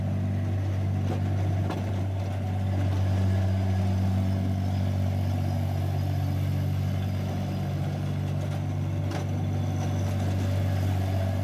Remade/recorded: recorded